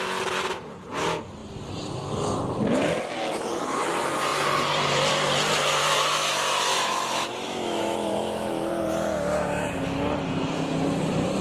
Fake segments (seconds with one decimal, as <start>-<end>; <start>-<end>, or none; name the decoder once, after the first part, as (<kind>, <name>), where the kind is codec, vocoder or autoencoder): 5.8-8.7 (autoencoder, DAC-VAE)